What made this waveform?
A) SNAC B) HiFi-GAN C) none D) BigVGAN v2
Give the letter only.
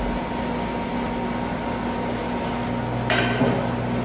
C